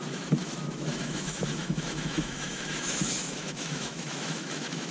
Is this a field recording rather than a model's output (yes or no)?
no